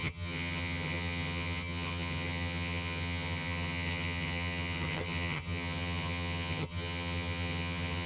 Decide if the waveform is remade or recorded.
remade